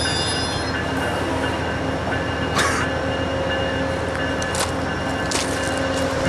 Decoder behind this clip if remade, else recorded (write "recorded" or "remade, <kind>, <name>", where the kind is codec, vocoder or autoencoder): recorded